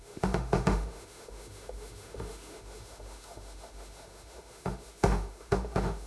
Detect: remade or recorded remade